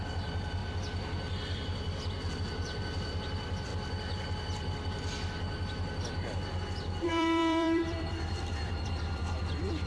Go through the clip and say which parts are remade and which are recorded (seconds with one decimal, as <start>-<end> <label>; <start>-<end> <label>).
0.0-0.6 remade; 0.6-2.3 recorded; 2.3-3.7 remade; 3.7-6.7 recorded; 6.7-9.9 remade